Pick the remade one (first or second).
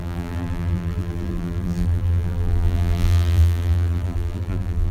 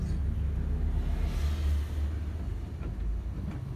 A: first